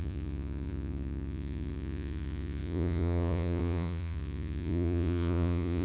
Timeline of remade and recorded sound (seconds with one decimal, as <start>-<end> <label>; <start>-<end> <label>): 0.0-5.8 remade